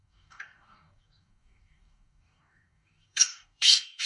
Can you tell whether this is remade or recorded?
remade